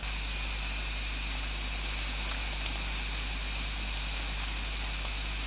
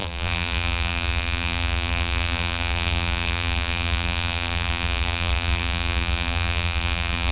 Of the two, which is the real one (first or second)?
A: first